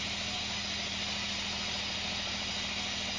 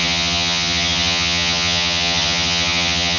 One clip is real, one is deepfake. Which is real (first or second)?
first